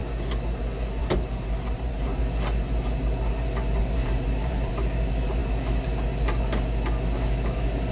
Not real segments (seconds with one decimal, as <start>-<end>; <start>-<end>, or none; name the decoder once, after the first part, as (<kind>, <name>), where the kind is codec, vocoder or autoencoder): 1.0-2.2 (vocoder, BigVGAN v2); 3.8-4.7